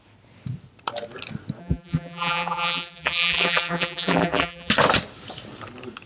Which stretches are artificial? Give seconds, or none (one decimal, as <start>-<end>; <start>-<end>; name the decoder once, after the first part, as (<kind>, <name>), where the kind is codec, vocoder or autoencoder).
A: 1.6-4.7 (vocoder, BigVGAN v2)